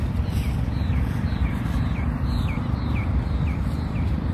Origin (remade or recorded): recorded